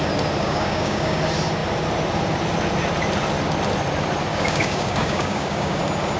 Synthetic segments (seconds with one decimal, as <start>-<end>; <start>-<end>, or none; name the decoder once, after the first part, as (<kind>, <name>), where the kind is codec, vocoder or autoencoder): 0.4-1.2 (codec, DAC); 4.3-5.8